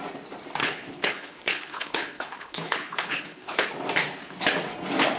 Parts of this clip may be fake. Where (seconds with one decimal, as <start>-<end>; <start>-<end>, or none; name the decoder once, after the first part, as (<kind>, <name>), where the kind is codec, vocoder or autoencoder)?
0.6-3.7 (codec, HILCodec)